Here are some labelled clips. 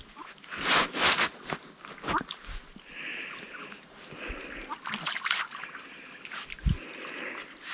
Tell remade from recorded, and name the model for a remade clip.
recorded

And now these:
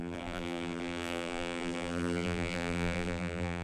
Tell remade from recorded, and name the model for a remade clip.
remade, vocoder, BigVGAN v2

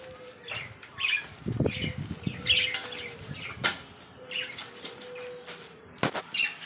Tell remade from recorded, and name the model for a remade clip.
recorded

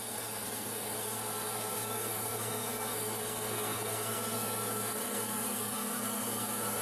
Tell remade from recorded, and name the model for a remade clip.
remade, codec, SNAC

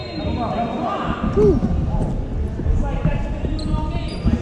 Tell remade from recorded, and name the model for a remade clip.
recorded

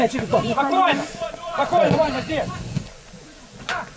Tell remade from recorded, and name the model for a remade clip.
remade, vocoder, Vocos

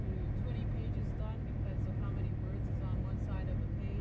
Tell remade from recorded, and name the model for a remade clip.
recorded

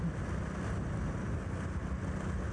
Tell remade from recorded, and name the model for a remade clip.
recorded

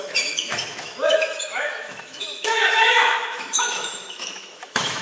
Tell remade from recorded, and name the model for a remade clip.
remade, autoencoder, DAC-VAE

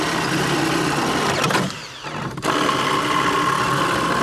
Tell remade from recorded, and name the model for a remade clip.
recorded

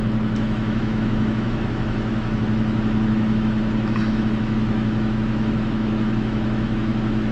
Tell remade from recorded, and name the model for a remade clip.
remade, autoencoder, DAC-VAE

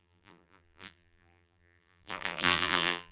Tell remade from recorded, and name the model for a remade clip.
remade, vocoder, BigVGAN v2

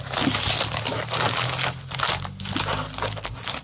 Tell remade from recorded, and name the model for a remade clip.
recorded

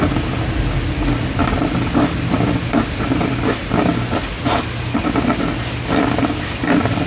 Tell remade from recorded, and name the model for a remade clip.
recorded